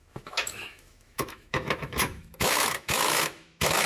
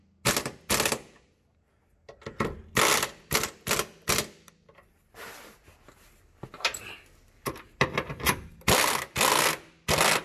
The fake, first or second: first